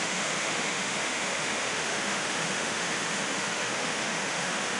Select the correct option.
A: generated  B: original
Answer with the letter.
A